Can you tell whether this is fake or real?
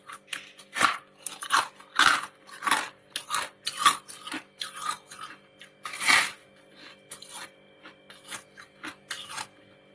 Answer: real